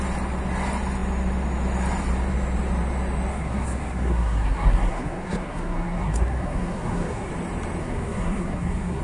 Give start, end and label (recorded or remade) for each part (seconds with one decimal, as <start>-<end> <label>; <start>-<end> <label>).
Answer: 0.0-3.3 recorded; 3.3-7.3 remade; 7.3-7.8 recorded; 7.8-9.0 remade

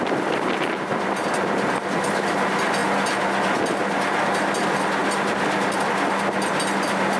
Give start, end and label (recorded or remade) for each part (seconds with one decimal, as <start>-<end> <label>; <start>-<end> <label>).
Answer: 0.0-7.2 recorded

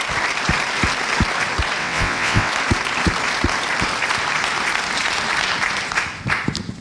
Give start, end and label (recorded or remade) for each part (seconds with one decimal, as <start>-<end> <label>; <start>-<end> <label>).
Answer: 0.0-1.8 recorded; 1.8-2.5 remade; 2.5-6.8 recorded

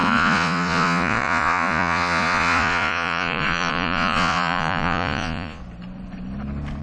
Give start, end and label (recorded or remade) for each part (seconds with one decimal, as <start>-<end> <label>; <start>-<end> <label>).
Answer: 0.0-5.6 remade; 5.6-6.8 recorded

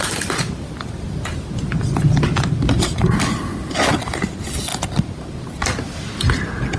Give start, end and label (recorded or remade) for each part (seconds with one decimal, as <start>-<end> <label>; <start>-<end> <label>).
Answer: 0.0-6.8 recorded

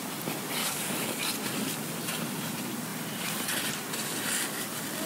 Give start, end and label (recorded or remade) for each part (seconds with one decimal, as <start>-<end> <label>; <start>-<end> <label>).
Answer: 0.0-0.6 recorded; 0.6-1.2 remade; 1.2-5.1 recorded

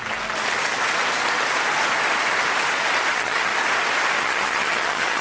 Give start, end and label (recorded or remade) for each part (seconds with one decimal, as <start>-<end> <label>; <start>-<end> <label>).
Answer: 0.0-3.1 recorded; 3.1-3.5 remade; 3.5-4.2 recorded; 4.2-5.2 remade